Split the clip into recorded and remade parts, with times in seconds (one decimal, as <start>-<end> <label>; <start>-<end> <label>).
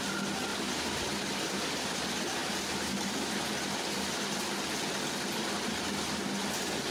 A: 0.0-6.9 recorded